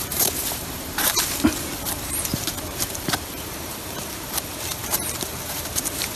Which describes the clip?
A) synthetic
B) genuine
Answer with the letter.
A